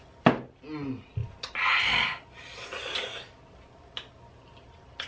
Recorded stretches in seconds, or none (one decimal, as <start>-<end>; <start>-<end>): 0.0-5.1